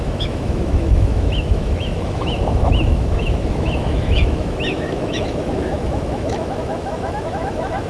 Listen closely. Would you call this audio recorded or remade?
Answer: remade